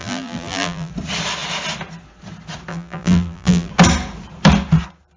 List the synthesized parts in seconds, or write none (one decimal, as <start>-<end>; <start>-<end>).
0.0-0.9; 2.7-3.7